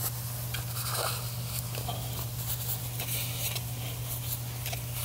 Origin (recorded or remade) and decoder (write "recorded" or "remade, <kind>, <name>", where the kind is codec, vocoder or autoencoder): recorded